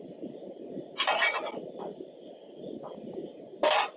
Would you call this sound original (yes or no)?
yes